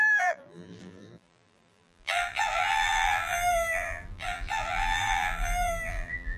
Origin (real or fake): fake